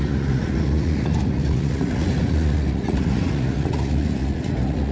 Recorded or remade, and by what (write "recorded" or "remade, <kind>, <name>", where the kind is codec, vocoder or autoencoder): remade, vocoder, Vocos